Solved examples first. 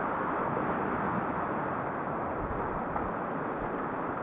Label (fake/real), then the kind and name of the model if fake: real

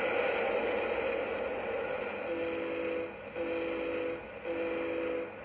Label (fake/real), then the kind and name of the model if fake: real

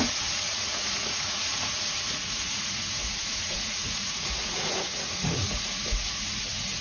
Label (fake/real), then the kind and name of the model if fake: fake, vocoder, Vocos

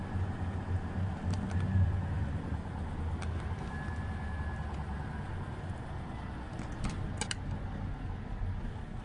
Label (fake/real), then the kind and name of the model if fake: real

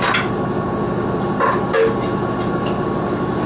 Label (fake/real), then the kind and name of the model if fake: real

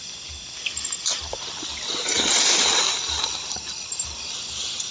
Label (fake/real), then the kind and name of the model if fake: real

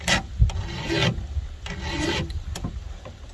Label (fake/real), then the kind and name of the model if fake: real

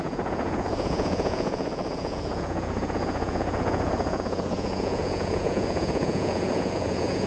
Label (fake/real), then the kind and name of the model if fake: fake, vocoder, Vocos